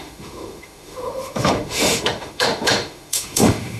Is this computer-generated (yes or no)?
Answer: yes